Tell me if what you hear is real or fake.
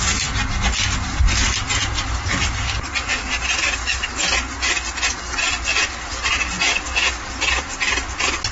real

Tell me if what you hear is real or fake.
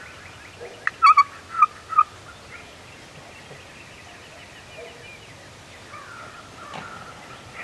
real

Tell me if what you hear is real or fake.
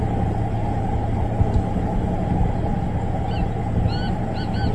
real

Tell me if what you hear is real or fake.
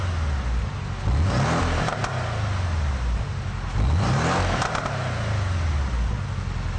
real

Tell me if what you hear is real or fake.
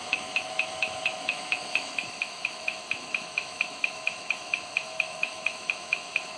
fake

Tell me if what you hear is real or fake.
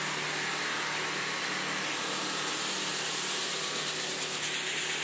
real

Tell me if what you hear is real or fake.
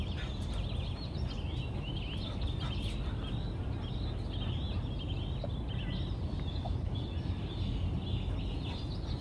real